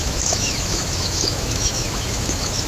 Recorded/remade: remade